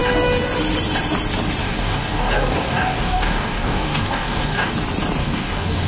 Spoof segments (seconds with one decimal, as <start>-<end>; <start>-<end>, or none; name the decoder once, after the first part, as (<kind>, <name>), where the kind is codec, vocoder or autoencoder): 1.6-4.7 (codec, DAC); 5.2-5.9